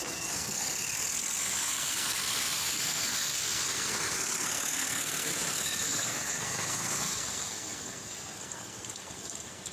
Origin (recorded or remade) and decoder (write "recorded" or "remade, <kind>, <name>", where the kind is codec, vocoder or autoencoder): remade, codec, SNAC